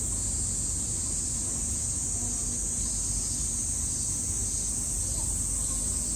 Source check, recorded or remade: recorded